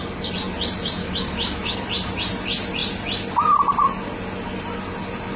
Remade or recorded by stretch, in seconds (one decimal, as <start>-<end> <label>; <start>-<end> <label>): 0.0-1.0 recorded; 1.0-1.9 remade; 1.9-5.4 recorded